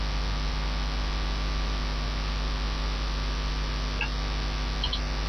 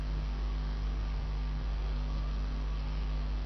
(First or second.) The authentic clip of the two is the first